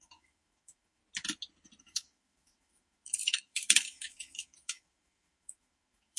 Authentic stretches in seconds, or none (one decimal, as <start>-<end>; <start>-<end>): 1.0-1.8